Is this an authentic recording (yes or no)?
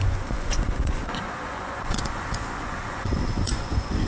no